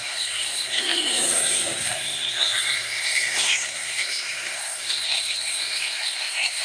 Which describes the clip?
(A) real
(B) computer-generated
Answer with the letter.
B